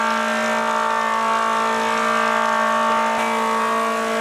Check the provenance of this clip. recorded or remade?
recorded